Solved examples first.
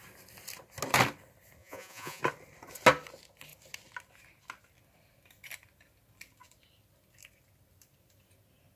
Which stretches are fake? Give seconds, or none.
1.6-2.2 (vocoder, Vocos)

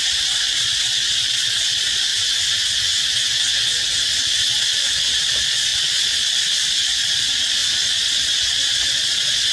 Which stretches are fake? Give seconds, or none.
0.0-2.1 (vocoder, Vocos); 4.1-9.5

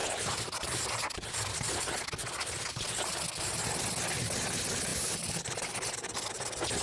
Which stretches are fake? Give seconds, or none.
0.0-1.7 (vocoder, BigVGAN v2); 4.9-6.8